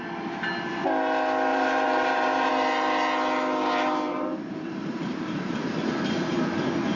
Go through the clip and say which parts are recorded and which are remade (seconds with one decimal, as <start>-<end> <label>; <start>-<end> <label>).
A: 0.0-1.5 recorded; 1.5-2.5 remade; 2.5-4.1 recorded; 4.1-5.7 remade; 5.7-7.0 recorded